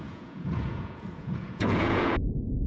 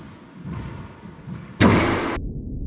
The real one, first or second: second